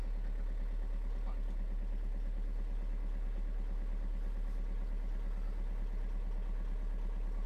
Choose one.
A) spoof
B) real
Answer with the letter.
B